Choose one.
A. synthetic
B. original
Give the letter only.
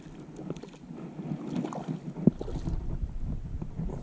B